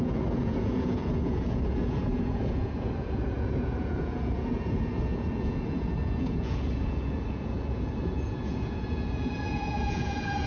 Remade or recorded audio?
remade